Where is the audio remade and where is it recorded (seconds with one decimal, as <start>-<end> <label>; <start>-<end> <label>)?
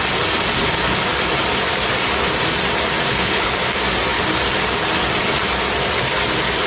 0.0-3.1 recorded; 3.1-3.6 remade; 3.6-6.7 recorded